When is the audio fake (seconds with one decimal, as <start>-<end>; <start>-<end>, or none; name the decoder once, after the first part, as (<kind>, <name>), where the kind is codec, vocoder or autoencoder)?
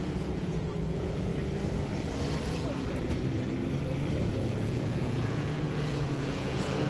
0.0-1.3 (vocoder, Vocos); 4.3-6.9